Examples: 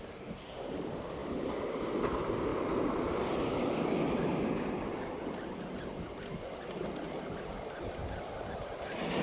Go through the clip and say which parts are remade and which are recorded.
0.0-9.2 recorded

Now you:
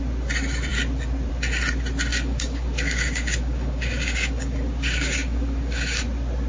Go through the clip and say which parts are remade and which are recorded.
0.0-2.1 recorded; 2.1-6.0 remade; 6.0-6.5 recorded